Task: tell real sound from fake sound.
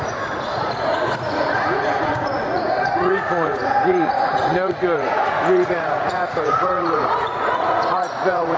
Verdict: fake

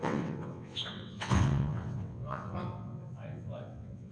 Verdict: fake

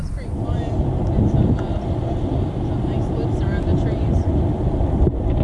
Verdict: real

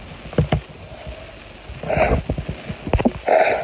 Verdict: real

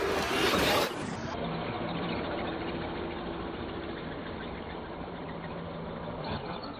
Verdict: fake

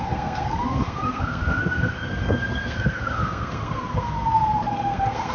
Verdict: fake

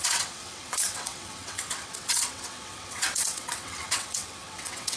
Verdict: fake